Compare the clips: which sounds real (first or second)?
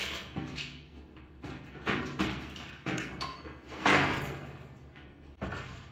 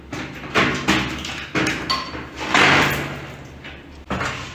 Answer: second